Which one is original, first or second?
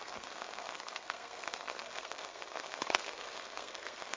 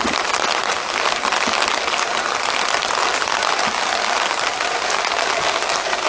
second